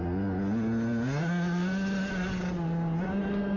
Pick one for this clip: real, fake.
real